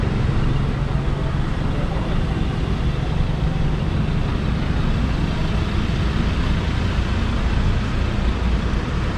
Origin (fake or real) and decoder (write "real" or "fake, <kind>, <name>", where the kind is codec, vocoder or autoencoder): real